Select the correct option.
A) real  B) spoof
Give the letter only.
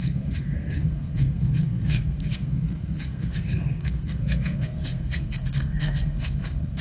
B